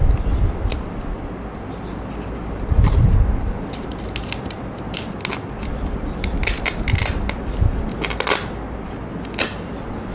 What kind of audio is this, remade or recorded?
recorded